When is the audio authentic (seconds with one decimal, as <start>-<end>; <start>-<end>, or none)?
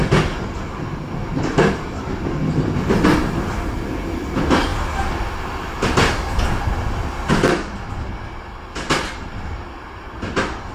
0.0-10.7